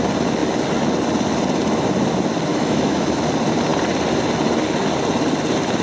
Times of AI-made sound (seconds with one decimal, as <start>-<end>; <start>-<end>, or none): 2.5-3.2